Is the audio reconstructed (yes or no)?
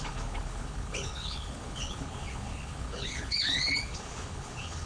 yes